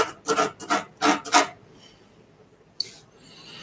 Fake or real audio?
real